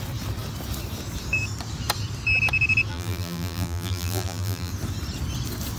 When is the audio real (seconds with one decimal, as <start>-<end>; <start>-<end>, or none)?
0.0-2.9; 4.7-5.8